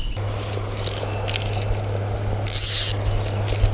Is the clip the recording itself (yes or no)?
yes